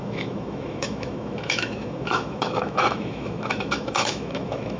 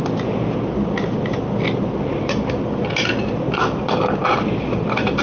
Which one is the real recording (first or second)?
second